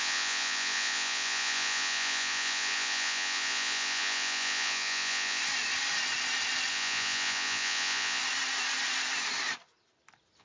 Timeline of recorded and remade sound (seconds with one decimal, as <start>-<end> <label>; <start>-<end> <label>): 0.0-5.4 remade; 5.4-6.7 recorded; 6.7-8.2 remade; 8.2-10.4 recorded